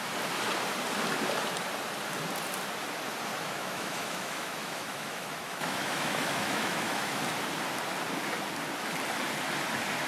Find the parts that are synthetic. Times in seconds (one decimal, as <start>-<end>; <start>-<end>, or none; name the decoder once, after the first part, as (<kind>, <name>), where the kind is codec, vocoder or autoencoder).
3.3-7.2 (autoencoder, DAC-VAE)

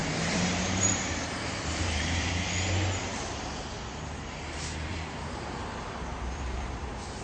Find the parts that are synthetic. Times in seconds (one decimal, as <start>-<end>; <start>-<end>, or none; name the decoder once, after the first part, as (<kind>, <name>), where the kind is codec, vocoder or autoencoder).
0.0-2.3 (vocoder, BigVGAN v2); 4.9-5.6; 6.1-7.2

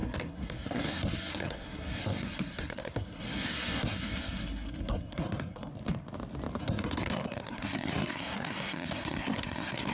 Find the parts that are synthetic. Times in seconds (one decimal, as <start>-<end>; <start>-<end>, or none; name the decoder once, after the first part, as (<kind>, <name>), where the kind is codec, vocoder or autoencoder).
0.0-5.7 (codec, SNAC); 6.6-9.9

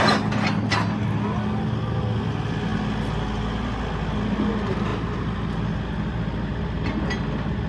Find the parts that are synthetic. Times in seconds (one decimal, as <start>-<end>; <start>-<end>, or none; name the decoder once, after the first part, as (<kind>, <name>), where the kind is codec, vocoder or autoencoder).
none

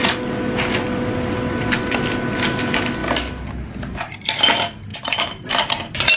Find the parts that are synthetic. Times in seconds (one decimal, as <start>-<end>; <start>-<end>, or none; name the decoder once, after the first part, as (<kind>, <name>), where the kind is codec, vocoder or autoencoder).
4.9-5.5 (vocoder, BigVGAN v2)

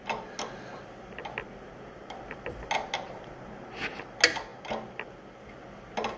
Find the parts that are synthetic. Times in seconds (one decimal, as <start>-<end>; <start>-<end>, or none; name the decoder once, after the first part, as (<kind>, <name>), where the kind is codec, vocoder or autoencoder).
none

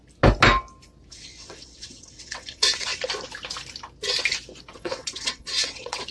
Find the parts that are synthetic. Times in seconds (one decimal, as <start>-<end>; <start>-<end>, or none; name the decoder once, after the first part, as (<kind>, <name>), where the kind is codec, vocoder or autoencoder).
1.1-2.9 (vocoder, WaveNeXt); 4.7-6.1

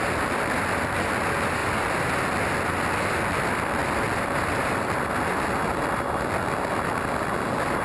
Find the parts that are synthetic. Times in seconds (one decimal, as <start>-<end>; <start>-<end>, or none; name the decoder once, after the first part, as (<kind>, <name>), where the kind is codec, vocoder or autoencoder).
none